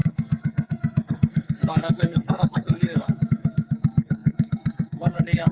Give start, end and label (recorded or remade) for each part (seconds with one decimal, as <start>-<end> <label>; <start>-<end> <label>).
0.0-5.5 remade